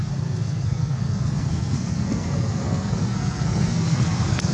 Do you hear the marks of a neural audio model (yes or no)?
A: yes